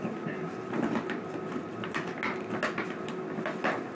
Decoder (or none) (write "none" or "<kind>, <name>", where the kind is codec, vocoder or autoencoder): none